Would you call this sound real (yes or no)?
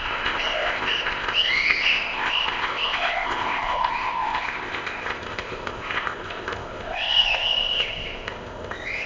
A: no